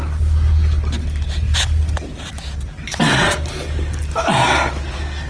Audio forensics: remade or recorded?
recorded